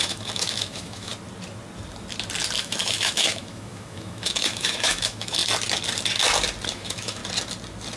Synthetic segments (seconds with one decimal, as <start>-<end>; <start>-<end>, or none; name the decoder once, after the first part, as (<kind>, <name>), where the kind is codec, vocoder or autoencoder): 0.0-1.1 (autoencoder, DAC-VAE); 2.6-5.4; 6.7-7.2